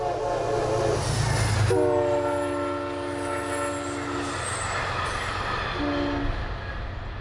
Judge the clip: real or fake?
real